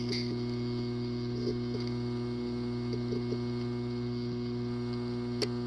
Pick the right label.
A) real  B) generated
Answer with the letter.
A